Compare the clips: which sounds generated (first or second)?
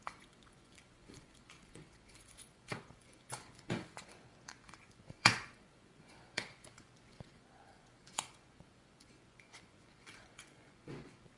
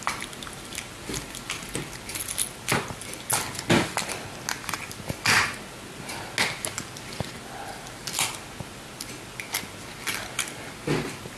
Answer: first